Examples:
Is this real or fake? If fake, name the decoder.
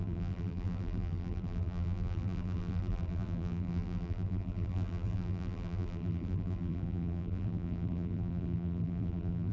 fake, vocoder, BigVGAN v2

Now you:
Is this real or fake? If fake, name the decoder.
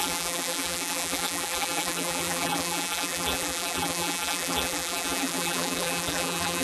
fake, vocoder, BigVGAN v2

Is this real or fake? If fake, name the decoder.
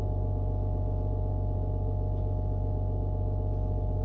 real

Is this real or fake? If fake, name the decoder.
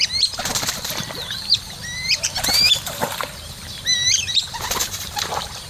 fake, vocoder, BigVGAN v2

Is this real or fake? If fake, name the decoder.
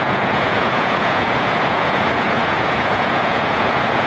fake, vocoder, Vocos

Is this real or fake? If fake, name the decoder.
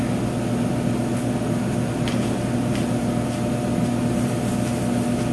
real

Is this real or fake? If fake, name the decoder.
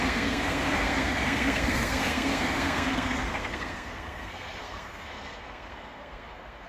fake, codec, SNAC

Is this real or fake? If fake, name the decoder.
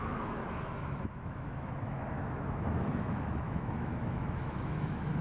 fake, autoencoder, DAC-VAE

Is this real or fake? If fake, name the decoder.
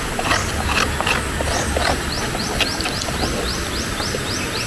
real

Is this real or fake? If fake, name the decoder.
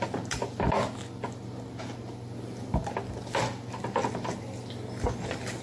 real